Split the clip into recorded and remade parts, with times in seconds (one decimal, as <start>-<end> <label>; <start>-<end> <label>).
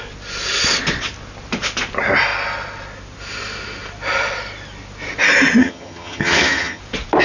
0.0-5.6 recorded; 5.6-6.8 remade; 6.8-7.2 recorded